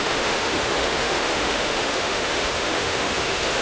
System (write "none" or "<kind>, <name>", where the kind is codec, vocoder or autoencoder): autoencoder, DAC-VAE